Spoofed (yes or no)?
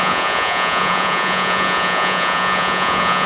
yes